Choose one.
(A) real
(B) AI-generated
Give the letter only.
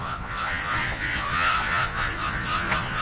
B